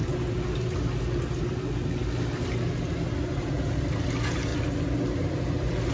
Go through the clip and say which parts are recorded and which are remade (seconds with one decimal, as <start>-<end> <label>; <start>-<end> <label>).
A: 0.0-3.3 recorded; 3.3-4.5 remade; 4.5-5.9 recorded